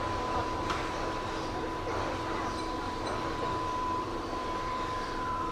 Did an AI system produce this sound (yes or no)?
yes